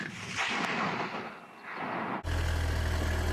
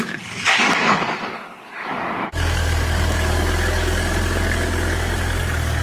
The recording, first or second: first